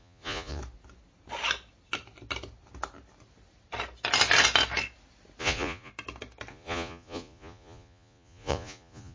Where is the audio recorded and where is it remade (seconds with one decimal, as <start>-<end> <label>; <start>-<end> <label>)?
0.0-0.6 remade; 0.6-5.4 recorded; 5.4-5.9 remade; 5.9-6.5 recorded; 6.5-9.1 remade

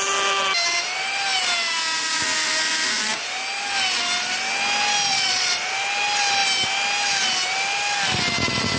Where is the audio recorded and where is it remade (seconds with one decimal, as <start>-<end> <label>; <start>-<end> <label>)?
0.0-5.1 recorded; 5.1-5.7 remade; 5.7-8.8 recorded

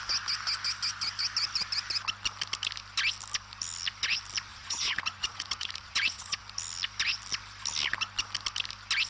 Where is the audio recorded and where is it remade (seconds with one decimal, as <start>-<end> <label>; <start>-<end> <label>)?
0.0-4.5 recorded; 4.5-6.4 remade; 6.4-9.1 recorded

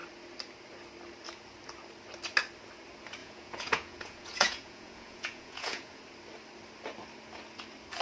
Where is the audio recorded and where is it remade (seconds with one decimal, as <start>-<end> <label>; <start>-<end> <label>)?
0.0-3.2 recorded; 3.2-6.0 remade; 6.0-8.0 recorded

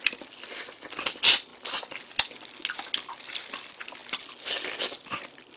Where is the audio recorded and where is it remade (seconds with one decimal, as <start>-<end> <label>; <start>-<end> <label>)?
0.0-5.6 recorded

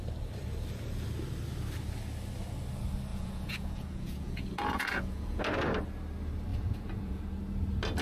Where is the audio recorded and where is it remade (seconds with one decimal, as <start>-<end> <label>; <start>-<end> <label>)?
0.0-3.1 recorded; 3.1-5.4 remade; 5.4-6.5 recorded; 6.5-7.2 remade; 7.2-8.0 recorded

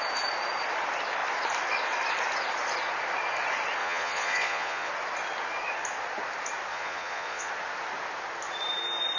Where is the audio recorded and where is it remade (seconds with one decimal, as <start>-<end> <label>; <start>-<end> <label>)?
0.0-3.8 recorded; 3.8-4.9 remade; 4.9-6.7 recorded; 6.7-7.5 remade; 7.5-9.2 recorded